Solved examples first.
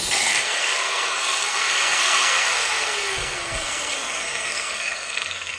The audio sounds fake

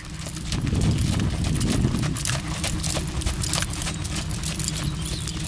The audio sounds real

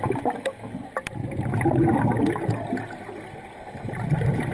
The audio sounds real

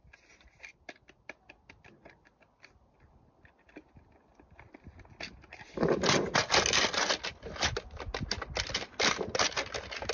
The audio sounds real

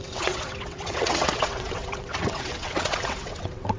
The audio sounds fake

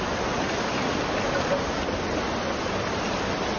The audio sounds real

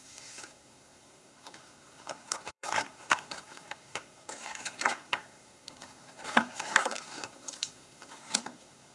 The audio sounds fake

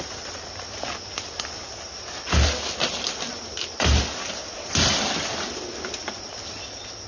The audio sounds real